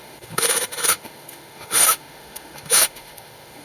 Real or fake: fake